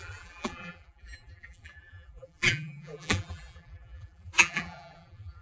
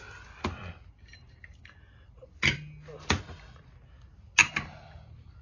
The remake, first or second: first